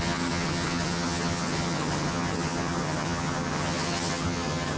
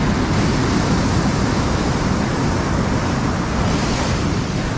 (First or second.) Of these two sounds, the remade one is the first